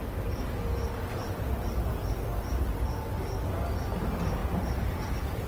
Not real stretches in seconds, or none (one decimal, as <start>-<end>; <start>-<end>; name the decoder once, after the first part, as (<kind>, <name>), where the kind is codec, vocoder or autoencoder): 4.4-5.1 (vocoder, BigVGAN v2)